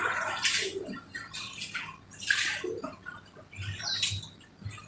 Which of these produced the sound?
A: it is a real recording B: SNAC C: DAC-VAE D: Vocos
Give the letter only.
A